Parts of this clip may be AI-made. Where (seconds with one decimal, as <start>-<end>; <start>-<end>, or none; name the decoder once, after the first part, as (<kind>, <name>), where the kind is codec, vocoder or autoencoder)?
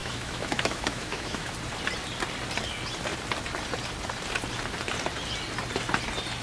0.0-1.5 (autoencoder, DAC-VAE)